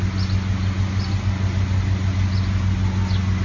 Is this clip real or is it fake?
real